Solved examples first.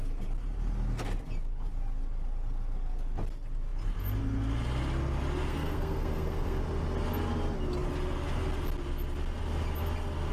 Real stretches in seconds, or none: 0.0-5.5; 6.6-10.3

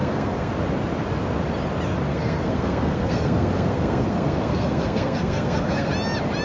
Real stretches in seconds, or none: 0.5-2.1; 5.9-6.4

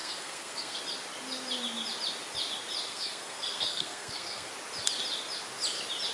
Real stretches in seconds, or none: 0.8-2.9; 4.5-6.1

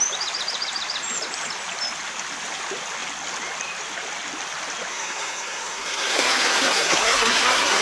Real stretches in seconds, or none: 0.0-4.9